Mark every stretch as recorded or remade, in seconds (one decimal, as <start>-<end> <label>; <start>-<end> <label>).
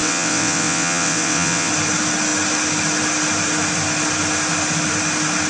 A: 0.0-1.7 remade; 1.7-5.5 recorded